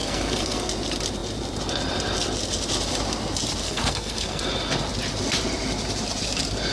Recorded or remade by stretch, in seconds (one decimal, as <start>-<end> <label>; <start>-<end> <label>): 0.0-0.7 remade; 0.7-3.6 recorded; 3.6-4.4 remade; 4.4-6.7 recorded